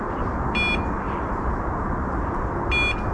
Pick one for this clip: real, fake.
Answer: real